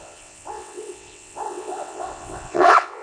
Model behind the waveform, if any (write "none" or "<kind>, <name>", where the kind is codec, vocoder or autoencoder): vocoder, WaveNeXt